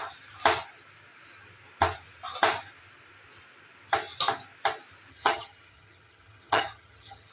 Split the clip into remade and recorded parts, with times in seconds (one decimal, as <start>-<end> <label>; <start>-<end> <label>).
0.0-5.1 recorded; 5.1-7.3 remade